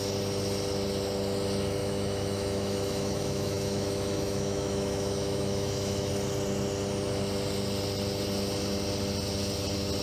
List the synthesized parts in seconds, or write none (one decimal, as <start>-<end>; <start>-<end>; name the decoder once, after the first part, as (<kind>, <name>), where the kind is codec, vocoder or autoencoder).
1.8-6.1 (autoencoder, DAC-VAE)